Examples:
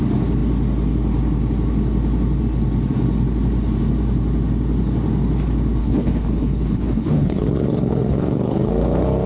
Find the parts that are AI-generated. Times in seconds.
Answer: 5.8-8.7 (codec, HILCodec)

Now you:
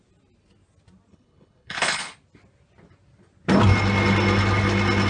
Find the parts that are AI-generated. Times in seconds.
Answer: 1.1-2.1 (codec, HILCodec)

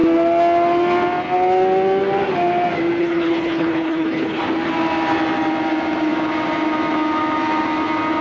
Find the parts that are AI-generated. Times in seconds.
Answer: 3.0-4.4 (codec, HILCodec)

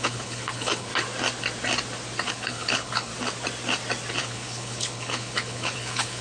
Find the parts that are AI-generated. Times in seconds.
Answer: 0.0-0.9 (codec, HILCodec); 2.3-3.1; 4.2-6.2

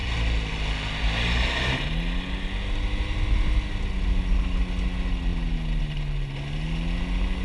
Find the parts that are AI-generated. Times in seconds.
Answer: none

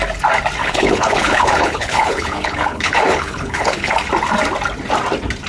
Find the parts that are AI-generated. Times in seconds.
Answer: 0.6-3.9 (codec, HILCodec)